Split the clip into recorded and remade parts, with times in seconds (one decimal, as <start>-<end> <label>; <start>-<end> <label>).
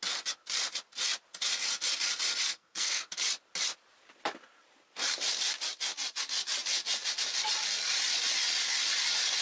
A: 0.0-2.5 recorded; 2.5-3.1 remade; 3.1-9.4 recorded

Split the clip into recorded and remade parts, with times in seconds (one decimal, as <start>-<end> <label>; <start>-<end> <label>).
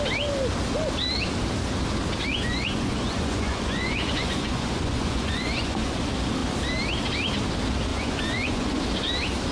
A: 0.0-2.3 recorded; 2.3-6.0 remade; 6.0-7.9 recorded; 7.9-8.8 remade; 8.8-9.5 recorded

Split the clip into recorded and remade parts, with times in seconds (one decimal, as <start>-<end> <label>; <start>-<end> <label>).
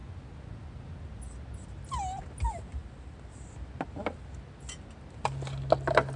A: 0.0-6.2 recorded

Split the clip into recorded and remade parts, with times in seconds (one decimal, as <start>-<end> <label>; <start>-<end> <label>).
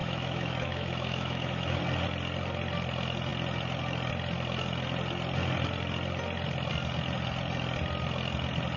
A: 0.0-1.8 remade; 1.8-8.8 recorded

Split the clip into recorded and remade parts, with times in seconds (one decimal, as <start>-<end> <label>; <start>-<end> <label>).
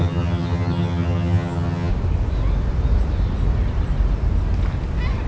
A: 0.0-1.9 remade; 1.9-5.3 recorded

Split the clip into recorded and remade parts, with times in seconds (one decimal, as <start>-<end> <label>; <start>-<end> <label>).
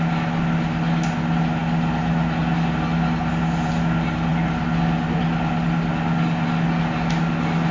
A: 0.0-7.7 recorded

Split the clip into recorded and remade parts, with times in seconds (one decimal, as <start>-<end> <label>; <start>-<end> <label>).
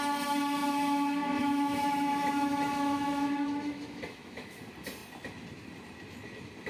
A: 0.0-0.6 recorded; 0.6-4.6 remade; 4.6-6.7 recorded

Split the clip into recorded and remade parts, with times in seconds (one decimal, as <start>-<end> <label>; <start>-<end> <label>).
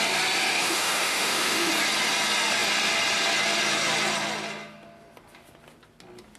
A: 0.0-0.5 recorded; 0.5-1.7 remade; 1.7-6.4 recorded